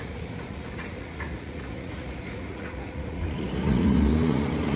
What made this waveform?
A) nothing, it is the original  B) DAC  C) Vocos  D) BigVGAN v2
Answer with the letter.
C